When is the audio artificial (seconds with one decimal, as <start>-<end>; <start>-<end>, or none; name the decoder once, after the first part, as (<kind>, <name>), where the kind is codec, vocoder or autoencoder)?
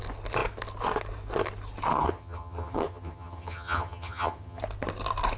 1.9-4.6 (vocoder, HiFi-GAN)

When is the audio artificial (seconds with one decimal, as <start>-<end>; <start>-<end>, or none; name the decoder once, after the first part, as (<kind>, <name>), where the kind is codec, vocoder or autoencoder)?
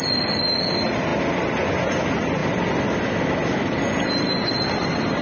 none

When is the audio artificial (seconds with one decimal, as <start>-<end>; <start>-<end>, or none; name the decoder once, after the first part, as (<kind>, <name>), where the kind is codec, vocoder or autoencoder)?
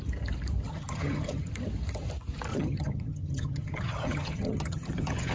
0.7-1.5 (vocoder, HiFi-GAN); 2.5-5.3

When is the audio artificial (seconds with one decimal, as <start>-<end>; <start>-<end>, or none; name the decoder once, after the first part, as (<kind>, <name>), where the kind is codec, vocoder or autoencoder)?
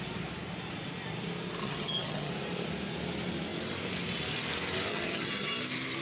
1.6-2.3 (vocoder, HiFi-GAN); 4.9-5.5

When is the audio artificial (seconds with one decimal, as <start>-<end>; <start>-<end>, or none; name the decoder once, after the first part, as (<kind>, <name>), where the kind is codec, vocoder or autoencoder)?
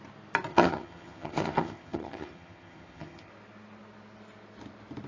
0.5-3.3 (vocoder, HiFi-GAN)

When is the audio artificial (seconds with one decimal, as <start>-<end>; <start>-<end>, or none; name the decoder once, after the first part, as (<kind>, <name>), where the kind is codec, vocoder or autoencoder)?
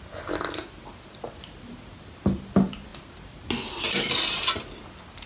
none